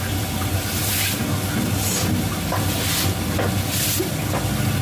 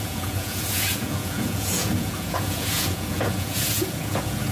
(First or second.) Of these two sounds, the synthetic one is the second